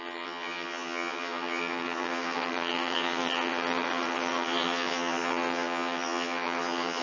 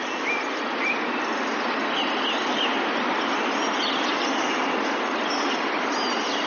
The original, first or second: second